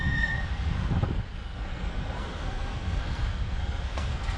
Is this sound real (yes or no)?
no